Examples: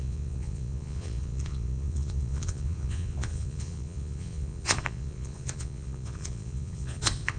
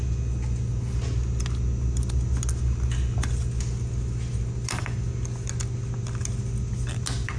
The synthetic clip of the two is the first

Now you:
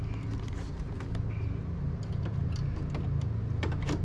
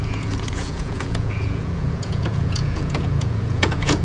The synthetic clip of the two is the second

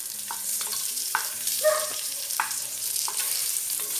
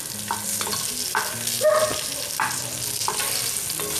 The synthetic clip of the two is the first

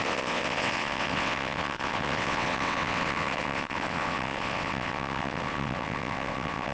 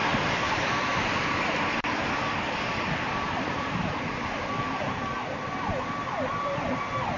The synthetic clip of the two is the first